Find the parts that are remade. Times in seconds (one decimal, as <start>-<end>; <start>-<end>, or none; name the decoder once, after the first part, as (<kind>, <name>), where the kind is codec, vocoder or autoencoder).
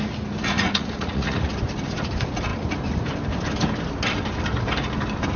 0.4-1.5 (vocoder, Vocos)